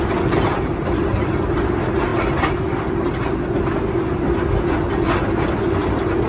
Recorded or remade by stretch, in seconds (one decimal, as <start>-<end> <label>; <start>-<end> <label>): 0.0-6.3 recorded